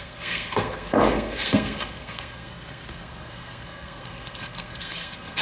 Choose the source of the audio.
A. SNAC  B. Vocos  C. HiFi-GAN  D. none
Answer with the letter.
A